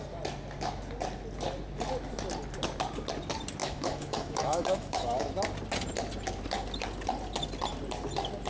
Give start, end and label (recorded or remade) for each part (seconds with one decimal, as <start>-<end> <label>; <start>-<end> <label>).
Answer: 0.0-3.6 recorded; 3.6-5.3 remade; 5.3-8.5 recorded

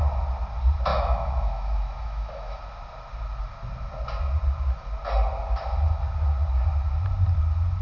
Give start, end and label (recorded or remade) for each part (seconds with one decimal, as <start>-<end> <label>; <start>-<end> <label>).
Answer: 0.0-0.9 recorded; 0.9-2.6 remade; 2.6-7.8 recorded

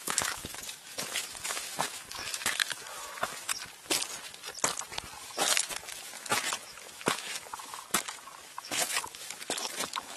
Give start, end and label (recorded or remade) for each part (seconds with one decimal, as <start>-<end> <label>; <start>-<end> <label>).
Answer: 0.0-3.5 remade; 3.5-5.2 recorded; 5.2-10.2 remade

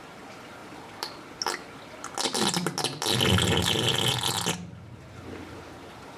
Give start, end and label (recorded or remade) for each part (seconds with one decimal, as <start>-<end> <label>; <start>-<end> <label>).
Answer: 0.0-6.2 recorded

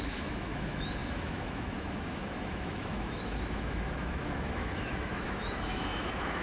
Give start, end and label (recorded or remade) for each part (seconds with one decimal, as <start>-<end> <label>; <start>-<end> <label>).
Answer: 0.0-6.4 remade